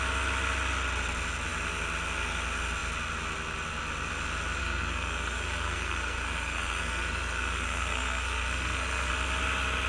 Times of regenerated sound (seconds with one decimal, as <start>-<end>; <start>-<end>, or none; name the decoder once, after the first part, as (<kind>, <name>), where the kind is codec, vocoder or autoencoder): 4.6-9.1 (codec, SNAC)